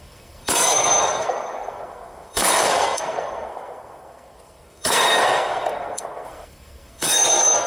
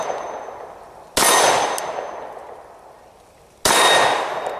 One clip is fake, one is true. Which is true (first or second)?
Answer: second